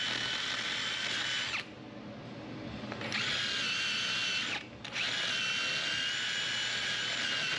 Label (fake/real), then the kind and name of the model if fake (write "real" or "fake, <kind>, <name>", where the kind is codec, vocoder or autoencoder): real